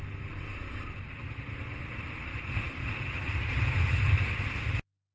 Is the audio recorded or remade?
recorded